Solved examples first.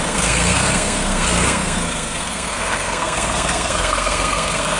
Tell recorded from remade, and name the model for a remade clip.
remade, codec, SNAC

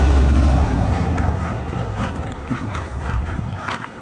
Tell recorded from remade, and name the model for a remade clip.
remade, codec, SNAC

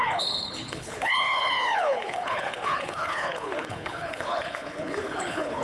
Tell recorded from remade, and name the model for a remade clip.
remade, codec, HILCodec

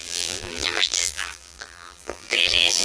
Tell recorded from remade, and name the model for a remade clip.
remade, vocoder, BigVGAN v2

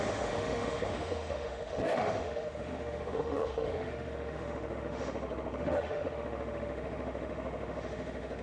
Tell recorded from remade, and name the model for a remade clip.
remade, autoencoder, DAC-VAE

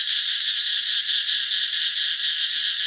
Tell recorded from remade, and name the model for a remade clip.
recorded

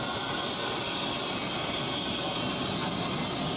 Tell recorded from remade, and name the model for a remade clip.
recorded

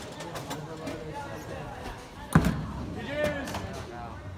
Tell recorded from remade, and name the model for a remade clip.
recorded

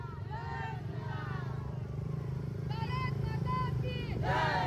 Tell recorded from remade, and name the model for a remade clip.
recorded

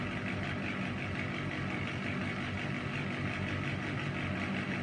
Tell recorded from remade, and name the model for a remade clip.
recorded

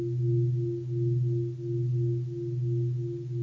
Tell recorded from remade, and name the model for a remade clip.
recorded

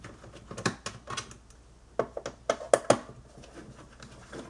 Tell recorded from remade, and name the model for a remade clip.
recorded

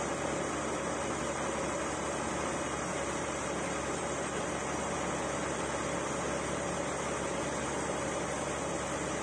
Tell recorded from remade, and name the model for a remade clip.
recorded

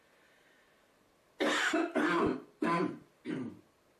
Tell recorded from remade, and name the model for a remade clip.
recorded